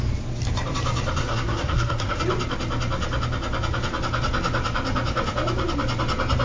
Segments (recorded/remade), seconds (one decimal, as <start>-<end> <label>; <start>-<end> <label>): 0.0-1.2 recorded; 1.2-2.2 remade; 2.2-6.4 recorded